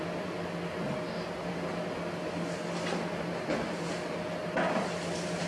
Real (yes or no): yes